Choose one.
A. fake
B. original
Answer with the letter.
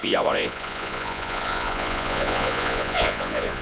A